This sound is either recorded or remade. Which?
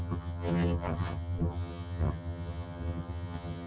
remade